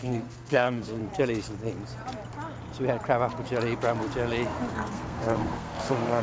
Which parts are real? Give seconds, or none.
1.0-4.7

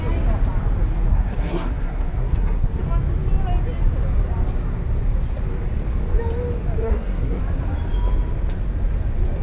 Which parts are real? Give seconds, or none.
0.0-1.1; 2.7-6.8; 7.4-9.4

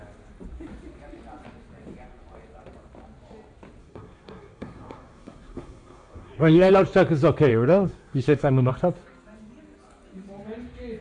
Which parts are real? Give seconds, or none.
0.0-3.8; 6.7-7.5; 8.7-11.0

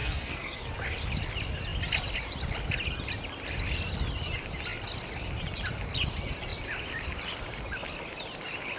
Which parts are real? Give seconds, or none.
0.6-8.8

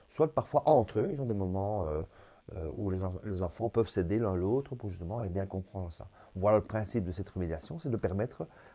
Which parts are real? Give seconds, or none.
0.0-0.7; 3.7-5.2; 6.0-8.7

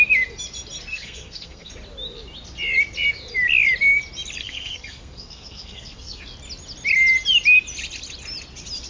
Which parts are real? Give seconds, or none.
0.0-0.9; 1.7-4.4; 6.2-8.9

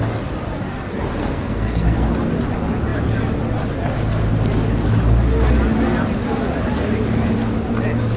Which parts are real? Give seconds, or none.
0.0-1.2; 2.1-8.2

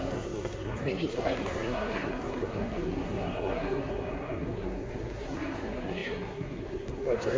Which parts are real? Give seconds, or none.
none